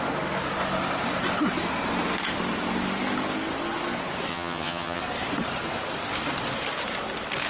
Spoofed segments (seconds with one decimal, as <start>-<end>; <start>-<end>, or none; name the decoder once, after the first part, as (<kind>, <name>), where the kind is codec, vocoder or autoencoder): 4.3-5.0 (vocoder, HiFi-GAN)